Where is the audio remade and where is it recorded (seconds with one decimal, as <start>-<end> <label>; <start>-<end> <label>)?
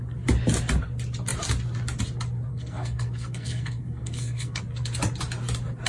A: 0.0-2.5 recorded; 2.5-4.6 remade; 4.6-5.9 recorded